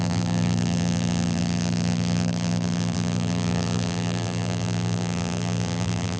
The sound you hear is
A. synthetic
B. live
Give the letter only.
A